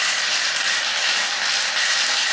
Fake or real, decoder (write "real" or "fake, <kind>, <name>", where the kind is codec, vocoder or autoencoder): real